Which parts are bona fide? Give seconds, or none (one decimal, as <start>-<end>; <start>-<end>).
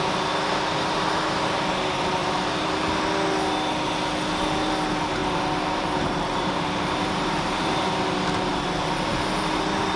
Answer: 0.0-2.2; 2.9-5.2; 8.5-10.0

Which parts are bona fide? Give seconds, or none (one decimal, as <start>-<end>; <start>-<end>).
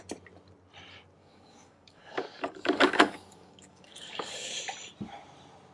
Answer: 0.0-1.2; 4.6-5.7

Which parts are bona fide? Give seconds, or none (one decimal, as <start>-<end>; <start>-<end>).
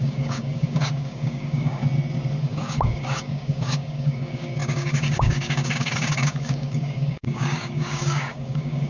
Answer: 1.8-2.4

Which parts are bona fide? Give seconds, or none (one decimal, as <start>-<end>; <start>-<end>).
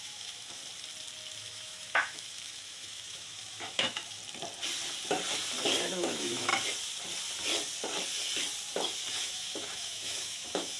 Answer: 0.6-1.4; 4.2-5.9; 6.5-9.1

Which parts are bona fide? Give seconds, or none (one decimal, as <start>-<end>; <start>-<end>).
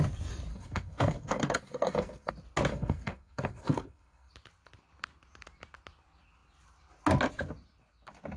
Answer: 0.0-0.5; 2.3-2.7; 4.3-8.4